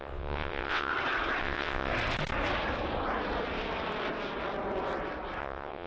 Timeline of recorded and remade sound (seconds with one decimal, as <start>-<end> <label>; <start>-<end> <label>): 0.0-0.9 remade; 0.9-1.4 recorded; 1.4-1.9 remade; 1.9-5.4 recorded; 5.4-5.9 remade